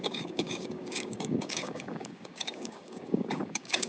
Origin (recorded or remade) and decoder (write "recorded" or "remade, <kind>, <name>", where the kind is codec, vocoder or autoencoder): remade, codec, DAC